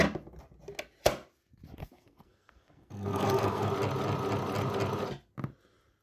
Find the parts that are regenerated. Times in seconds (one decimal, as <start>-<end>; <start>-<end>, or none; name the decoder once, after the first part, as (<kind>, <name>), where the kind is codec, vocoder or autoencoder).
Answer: 1.8-3.7 (codec, SNAC)